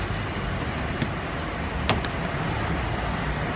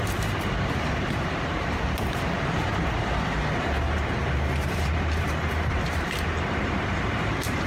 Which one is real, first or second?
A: first